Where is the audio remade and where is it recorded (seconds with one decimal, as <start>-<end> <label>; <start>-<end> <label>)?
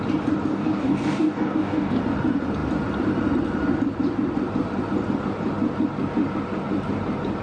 0.0-0.5 recorded; 0.5-2.0 remade; 2.0-7.4 recorded